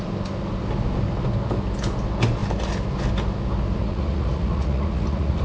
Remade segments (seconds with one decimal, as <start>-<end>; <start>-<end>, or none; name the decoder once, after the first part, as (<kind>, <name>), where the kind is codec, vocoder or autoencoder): 3.8-5.4 (vocoder, Vocos)